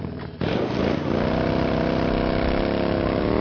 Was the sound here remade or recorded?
recorded